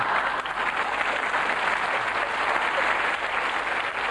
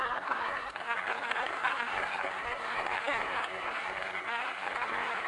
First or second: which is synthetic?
second